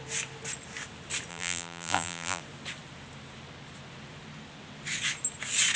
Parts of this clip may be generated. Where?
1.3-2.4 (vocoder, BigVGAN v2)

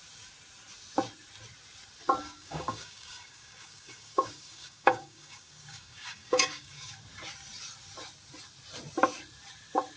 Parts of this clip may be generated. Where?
2.2-6.9 (codec, DAC)

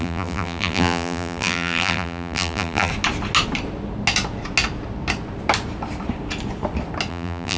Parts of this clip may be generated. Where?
0.0-2.9 (vocoder, BigVGAN v2); 7.1-7.6

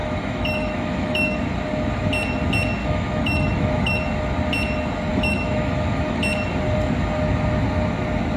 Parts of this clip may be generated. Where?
0.0-1.4 (autoencoder, DAC-VAE); 2.8-4.0; 5.1-6.2

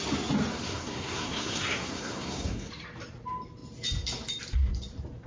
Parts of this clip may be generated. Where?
0.5-2.7 (codec, SNAC)

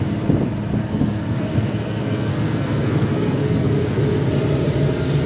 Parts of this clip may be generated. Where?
0.8-4.0 (codec, SNAC)

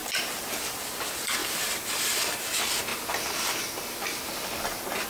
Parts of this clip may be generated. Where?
0.0-0.7 (vocoder, BigVGAN v2); 2.9-3.6